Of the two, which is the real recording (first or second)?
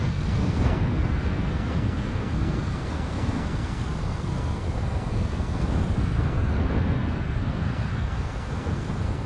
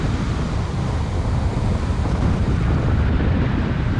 second